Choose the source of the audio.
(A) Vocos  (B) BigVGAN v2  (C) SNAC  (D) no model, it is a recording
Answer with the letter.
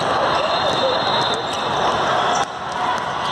D